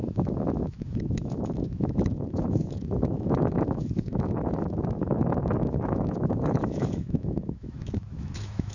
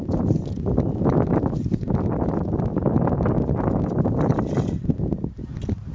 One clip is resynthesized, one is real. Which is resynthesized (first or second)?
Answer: first